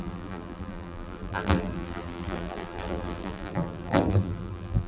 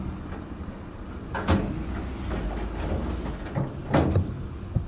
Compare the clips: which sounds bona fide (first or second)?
second